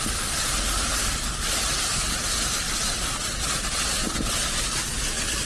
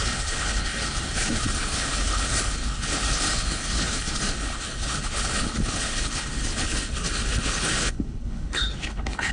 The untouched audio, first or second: first